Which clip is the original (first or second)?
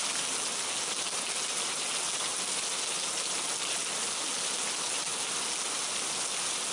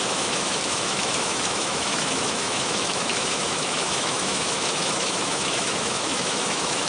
first